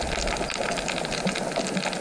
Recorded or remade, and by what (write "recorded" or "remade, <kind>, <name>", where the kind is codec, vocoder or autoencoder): recorded